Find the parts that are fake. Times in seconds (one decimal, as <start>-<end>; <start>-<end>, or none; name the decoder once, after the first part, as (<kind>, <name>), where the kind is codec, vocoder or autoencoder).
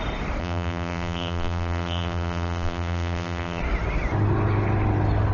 0.4-3.6 (vocoder, BigVGAN v2)